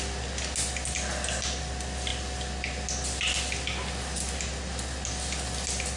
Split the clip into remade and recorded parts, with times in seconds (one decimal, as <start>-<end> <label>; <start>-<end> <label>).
0.0-6.0 recorded